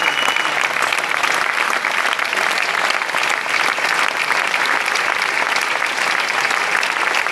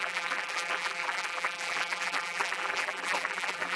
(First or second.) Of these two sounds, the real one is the first